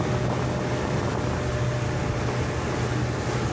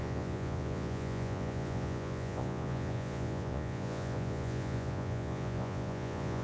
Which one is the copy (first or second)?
second